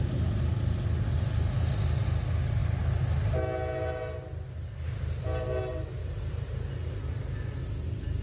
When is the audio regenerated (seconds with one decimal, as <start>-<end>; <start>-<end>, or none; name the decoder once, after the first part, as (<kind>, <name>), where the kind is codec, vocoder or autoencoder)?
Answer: 6.0-7.2 (vocoder, BigVGAN v2)